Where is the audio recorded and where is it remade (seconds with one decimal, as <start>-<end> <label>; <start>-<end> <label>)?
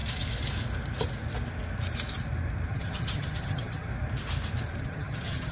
0.0-2.7 recorded; 2.7-3.9 remade; 3.9-4.8 recorded; 4.8-5.5 remade